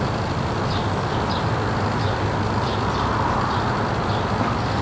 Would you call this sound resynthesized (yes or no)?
no